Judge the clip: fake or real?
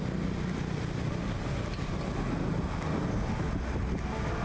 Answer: real